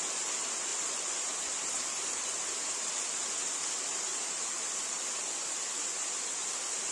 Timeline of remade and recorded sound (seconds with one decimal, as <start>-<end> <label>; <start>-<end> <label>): 0.0-0.7 recorded; 0.7-2.9 remade; 2.9-4.1 recorded; 4.1-6.9 remade